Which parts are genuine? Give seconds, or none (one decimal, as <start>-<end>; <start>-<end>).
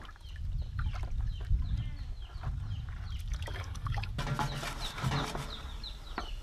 0.0-3.5; 4.1-6.4